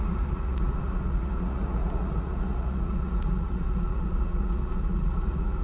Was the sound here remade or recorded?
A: remade